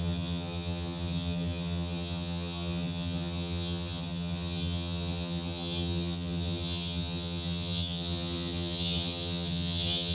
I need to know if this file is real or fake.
fake